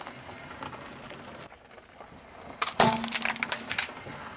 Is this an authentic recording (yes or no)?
yes